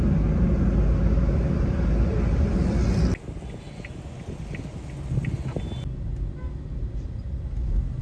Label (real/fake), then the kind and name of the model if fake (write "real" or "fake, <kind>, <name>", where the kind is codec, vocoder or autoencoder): real